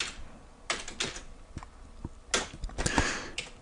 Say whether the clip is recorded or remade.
recorded